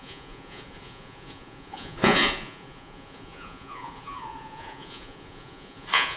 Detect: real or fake fake